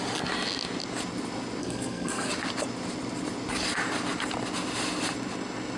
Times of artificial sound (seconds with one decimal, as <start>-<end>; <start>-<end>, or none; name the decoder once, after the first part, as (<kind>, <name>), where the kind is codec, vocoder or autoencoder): 1.6-2.3 (codec, SNAC)